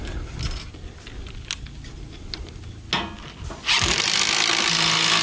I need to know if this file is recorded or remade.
recorded